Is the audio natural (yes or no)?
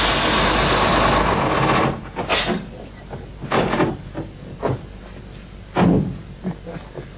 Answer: yes